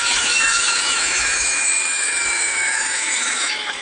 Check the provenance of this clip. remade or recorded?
remade